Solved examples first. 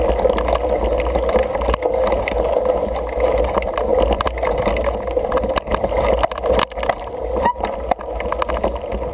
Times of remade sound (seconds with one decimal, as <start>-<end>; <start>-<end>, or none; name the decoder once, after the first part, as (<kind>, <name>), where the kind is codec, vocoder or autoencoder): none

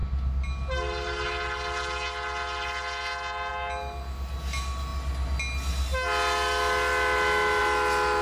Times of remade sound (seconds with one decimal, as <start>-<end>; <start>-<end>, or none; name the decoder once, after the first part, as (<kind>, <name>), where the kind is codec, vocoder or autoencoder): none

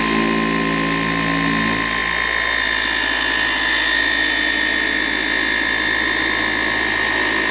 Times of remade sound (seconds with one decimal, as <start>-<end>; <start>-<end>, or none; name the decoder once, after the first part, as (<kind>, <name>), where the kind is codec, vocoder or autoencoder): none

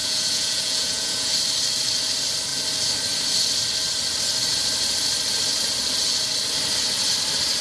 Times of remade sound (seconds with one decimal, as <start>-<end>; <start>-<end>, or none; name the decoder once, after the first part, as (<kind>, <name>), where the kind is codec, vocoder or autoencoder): 0.0-1.3 (vocoder, Vocos)